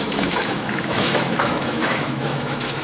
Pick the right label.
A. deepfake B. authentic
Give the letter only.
A